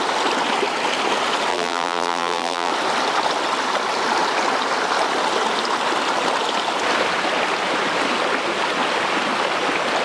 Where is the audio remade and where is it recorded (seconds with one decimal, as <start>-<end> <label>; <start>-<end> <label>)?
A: 0.0-1.5 recorded; 1.5-2.7 remade; 2.7-10.0 recorded